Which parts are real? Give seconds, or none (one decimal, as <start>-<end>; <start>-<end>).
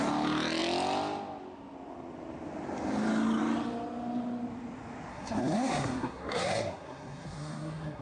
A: 0.0-5.1